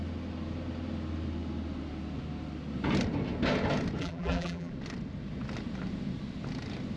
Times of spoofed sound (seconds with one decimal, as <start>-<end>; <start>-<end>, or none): 4.0-4.7